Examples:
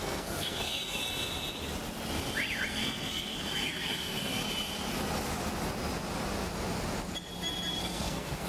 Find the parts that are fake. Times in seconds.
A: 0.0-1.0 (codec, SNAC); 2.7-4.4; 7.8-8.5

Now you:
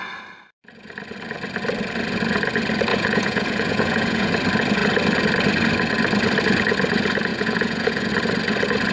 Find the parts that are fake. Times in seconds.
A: 2.9-4.3 (vocoder, Vocos); 7.3-8.1

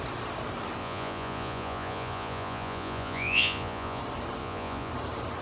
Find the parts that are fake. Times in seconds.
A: 0.8-4.0 (vocoder, Vocos); 4.4-4.9

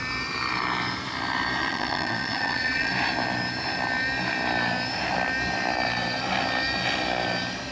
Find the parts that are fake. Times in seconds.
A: 1.6-2.9 (vocoder, Vocos)

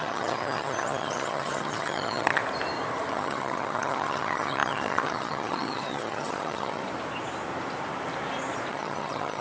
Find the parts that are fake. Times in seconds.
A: 0.0-2.4 (vocoder, HiFi-GAN); 3.1-6.8; 8.7-9.4

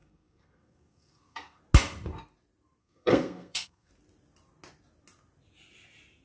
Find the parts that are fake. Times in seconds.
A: 0.0-1.6 (codec, SNAC); 2.8-3.9